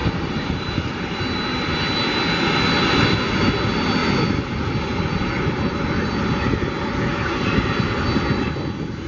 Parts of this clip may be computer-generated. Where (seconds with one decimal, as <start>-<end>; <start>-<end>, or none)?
0.0-1.2